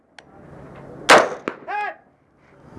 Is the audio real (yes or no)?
yes